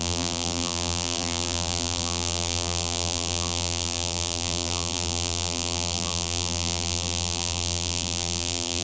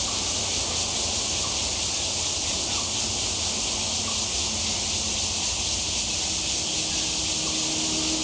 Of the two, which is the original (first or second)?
second